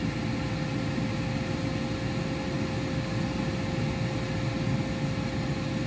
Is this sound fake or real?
real